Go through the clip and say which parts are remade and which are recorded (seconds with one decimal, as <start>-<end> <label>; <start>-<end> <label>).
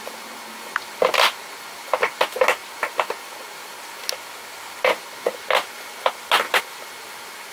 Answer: 0.0-7.5 recorded